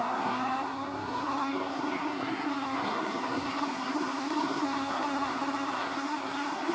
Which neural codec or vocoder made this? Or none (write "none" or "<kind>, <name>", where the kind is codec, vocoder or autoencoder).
codec, SNAC